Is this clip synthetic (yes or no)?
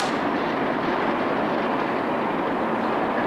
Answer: no